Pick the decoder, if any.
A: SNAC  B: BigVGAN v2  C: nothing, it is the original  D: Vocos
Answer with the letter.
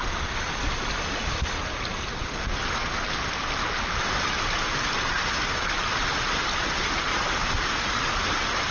C